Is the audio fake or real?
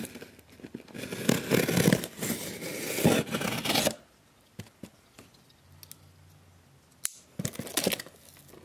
real